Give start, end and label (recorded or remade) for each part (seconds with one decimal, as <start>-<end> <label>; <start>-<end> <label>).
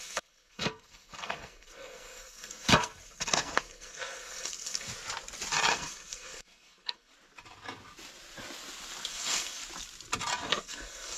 0.0-4.9 remade; 4.9-5.7 recorded; 5.7-7.1 remade; 7.1-9.1 recorded; 9.1-9.6 remade; 9.6-10.5 recorded; 10.5-11.2 remade